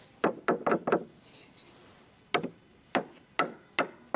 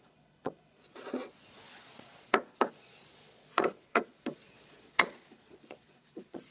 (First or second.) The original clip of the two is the first